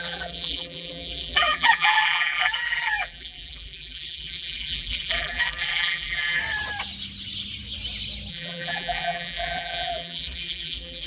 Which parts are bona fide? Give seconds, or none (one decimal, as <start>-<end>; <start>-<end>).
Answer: 6.4-8.3